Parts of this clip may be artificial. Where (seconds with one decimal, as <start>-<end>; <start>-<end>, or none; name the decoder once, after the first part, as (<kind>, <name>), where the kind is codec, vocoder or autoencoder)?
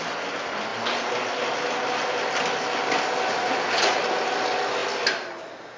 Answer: 3.4-4.0 (vocoder, Vocos)